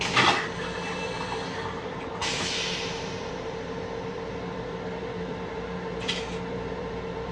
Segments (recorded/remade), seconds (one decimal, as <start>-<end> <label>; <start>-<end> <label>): 0.0-2.2 remade; 2.2-2.9 recorded; 2.9-7.3 remade